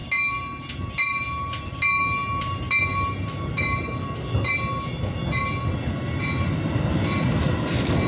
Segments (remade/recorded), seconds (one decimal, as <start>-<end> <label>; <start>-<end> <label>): 0.0-8.1 recorded